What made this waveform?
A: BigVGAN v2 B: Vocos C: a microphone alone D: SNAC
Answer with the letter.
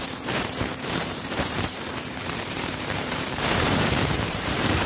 A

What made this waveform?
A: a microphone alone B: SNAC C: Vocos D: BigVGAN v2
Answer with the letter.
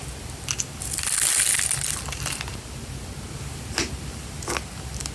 A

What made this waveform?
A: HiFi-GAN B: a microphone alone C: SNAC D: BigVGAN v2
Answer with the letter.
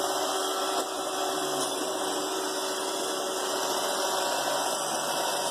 B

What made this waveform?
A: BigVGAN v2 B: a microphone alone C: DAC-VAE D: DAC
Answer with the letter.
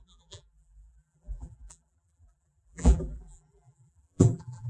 A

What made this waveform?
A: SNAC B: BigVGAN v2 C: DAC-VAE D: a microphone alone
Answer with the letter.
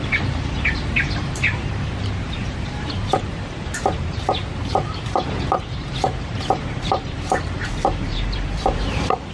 B